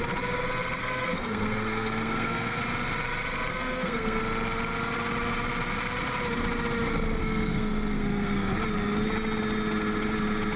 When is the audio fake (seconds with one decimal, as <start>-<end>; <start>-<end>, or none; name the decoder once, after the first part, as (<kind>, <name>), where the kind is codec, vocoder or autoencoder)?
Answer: 0.8-2.6 (codec, SNAC); 3.5-4.2; 7.2-8.5